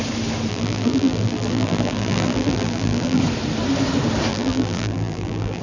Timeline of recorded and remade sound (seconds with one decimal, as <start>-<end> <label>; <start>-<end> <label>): 0.0-0.5 recorded; 0.5-3.2 remade; 3.2-4.3 recorded; 4.3-5.6 remade